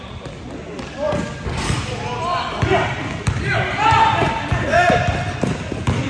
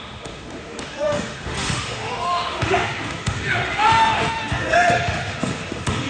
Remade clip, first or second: second